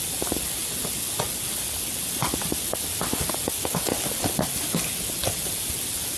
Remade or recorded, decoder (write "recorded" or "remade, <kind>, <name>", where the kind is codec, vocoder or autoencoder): recorded